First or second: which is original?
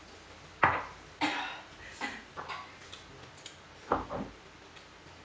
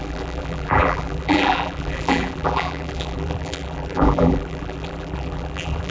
first